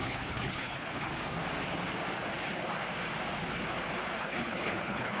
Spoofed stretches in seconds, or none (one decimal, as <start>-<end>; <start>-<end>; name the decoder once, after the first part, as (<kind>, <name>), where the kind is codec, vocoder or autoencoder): 0.0-1.1 (codec, HILCodec); 4.2-5.2